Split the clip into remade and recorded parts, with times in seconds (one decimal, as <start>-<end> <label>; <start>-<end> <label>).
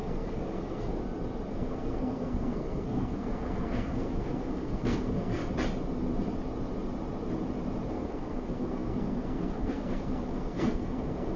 0.0-1.0 remade; 1.0-1.5 recorded; 1.5-5.4 remade; 5.4-7.9 recorded; 7.9-11.4 remade